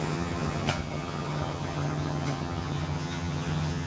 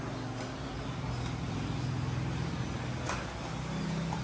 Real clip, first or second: second